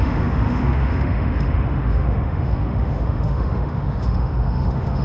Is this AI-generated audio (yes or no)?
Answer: yes